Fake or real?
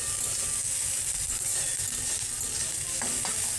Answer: real